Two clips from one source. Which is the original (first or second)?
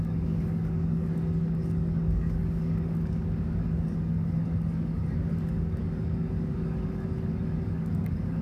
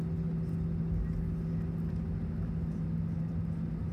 second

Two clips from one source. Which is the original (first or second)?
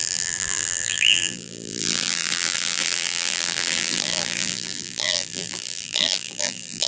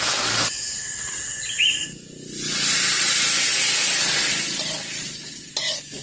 second